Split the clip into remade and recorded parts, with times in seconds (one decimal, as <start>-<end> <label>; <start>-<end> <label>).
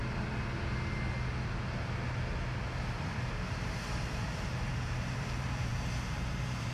0.0-3.5 recorded; 3.5-6.7 remade